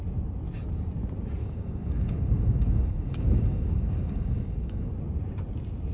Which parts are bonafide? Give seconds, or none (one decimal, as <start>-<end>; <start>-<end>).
0.0-1.4; 4.9-5.9